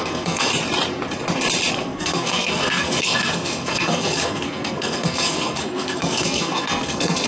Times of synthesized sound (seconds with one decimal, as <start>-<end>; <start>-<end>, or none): 0.0-0.5; 1.7-7.3

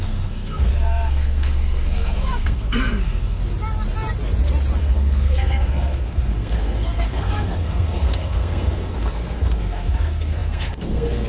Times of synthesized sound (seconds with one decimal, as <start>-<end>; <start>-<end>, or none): 0.0-3.4; 4.8-11.3

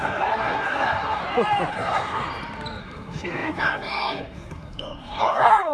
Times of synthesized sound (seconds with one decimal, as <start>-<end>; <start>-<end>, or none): 0.0-1.2; 1.7-2.2; 2.8-5.7

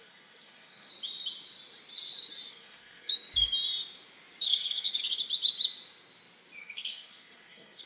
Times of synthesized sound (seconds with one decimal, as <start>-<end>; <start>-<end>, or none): 0.0-0.9; 2.5-3.1; 4.4-4.9; 6.6-7.9

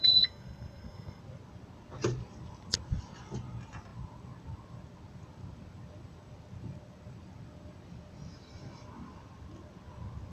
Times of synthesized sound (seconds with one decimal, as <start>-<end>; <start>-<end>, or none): 0.0-1.2

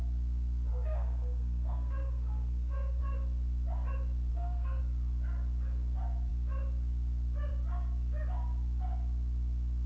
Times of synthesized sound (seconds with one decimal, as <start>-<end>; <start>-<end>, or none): 0.7-3.0; 4.3-4.8